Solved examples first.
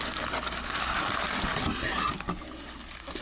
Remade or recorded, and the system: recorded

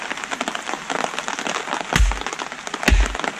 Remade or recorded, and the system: recorded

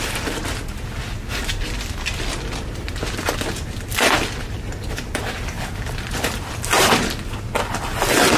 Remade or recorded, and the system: recorded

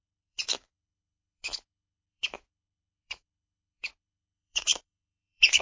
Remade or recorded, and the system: remade, autoencoder, DAC-VAE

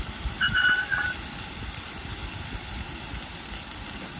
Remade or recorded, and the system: recorded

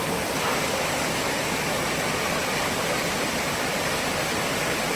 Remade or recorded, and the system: recorded